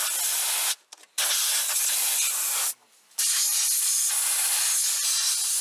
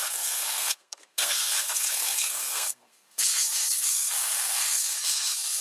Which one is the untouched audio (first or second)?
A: first